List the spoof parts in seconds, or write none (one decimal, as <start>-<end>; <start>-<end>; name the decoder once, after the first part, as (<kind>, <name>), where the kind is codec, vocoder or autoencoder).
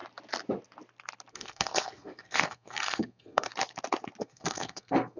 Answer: 1.3-3.5 (codec, SNAC); 4.2-5.2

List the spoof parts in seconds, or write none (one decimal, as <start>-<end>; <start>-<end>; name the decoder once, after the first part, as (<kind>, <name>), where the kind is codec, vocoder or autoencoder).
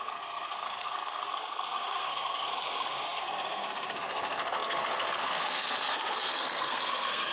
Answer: 0.0-7.3 (codec, SNAC)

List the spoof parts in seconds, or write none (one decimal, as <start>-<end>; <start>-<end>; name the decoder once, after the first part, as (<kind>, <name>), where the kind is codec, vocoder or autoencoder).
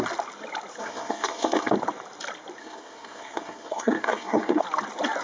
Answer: 0.8-1.7 (codec, SNAC); 2.6-4.6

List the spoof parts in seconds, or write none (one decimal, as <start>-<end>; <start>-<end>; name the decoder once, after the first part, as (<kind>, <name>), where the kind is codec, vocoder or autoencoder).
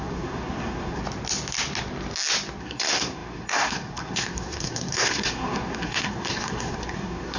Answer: 0.0-1.0 (codec, SNAC); 2.6-7.4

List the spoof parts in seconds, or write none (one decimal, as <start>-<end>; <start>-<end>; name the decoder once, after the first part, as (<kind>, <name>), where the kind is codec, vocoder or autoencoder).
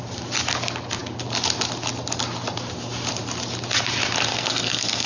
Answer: 4.3-5.1 (codec, SNAC)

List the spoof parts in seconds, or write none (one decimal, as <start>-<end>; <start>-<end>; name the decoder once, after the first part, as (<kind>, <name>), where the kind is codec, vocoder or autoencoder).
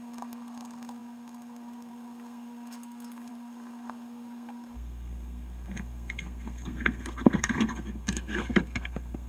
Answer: 0.0-9.3 (codec, SNAC)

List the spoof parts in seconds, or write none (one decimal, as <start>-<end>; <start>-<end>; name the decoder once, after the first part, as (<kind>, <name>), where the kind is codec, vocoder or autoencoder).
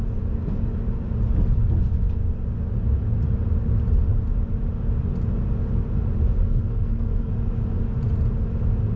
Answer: 6.4-7.3 (codec, SNAC)